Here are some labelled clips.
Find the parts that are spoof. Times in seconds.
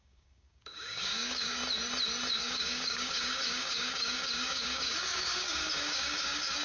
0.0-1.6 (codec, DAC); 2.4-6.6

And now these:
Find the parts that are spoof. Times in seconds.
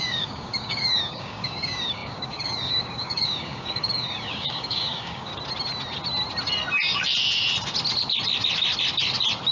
0.0-5.3 (codec, DAC)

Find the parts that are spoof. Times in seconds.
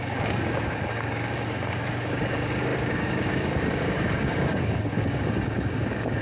0.0-6.2 (codec, DAC)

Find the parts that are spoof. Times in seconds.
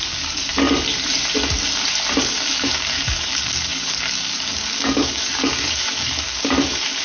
0.0-0.5 (codec, DAC); 2.2-7.0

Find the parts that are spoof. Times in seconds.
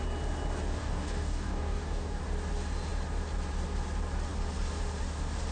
0.8-2.2 (codec, DAC)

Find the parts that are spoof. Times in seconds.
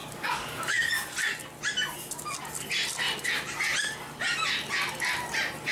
0.0-0.9 (codec, DAC)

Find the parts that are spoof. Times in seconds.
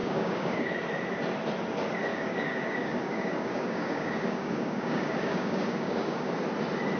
0.0-0.7 (codec, DAC); 2.1-6.3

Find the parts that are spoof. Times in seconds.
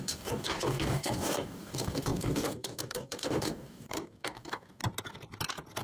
0.0-4.8 (codec, DAC)